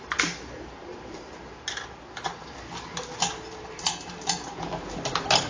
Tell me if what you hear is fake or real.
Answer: fake